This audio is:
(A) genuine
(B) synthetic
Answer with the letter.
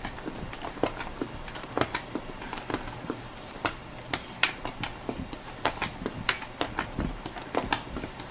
B